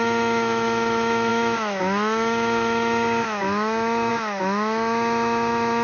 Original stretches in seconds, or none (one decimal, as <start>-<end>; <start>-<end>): none